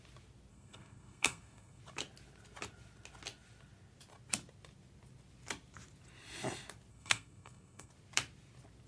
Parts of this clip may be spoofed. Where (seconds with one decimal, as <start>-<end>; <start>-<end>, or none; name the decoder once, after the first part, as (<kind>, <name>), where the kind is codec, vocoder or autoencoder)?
0.5-1.8 (codec, SNAC); 6.9-7.9